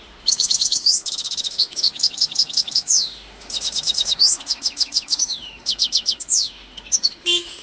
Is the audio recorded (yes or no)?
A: no